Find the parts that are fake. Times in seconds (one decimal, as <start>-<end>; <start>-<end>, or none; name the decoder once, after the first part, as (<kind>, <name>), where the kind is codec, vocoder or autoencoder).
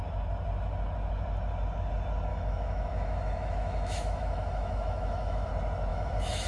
2.3-5.5 (autoencoder, DAC-VAE); 5.9-6.5